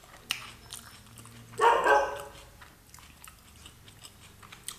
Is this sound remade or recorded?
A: recorded